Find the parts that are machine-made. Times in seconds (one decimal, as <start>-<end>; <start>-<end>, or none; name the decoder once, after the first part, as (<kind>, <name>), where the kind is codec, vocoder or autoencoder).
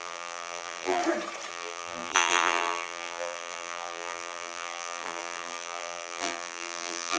0.0-1.0 (vocoder, BigVGAN v2); 1.5-7.2